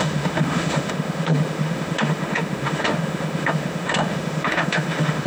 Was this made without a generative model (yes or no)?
no